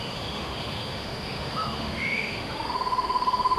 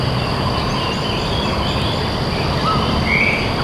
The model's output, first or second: first